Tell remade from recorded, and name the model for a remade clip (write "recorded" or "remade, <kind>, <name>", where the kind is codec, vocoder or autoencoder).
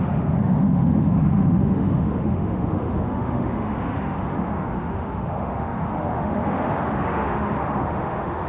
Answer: remade, autoencoder, DAC-VAE